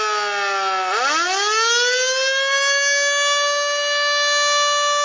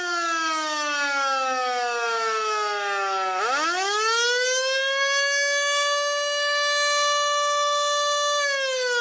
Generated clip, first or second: second